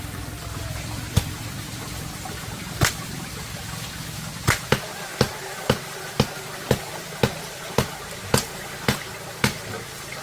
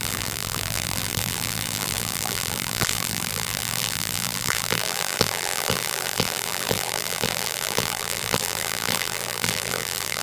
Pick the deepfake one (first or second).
second